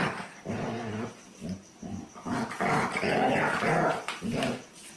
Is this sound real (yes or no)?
yes